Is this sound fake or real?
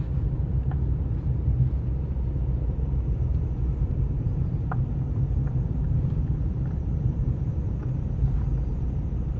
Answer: fake